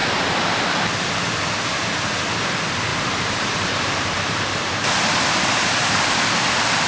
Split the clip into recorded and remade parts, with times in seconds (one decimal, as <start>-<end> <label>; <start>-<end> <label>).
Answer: 0.0-2.9 recorded; 2.9-6.5 remade; 6.5-6.9 recorded